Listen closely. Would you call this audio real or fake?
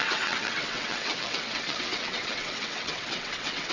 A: fake